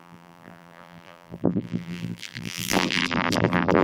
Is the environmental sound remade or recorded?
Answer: remade